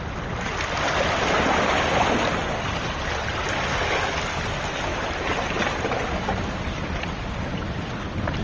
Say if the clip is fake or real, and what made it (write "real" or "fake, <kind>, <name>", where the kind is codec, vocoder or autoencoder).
real